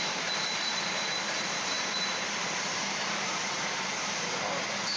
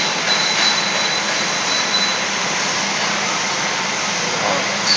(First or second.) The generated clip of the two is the first